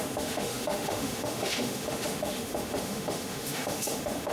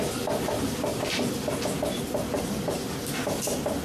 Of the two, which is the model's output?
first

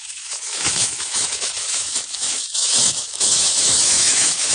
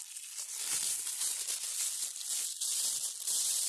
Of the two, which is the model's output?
first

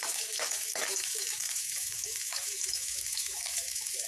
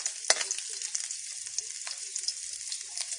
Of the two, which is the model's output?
first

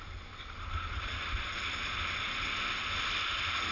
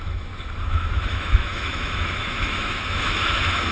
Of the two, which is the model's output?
second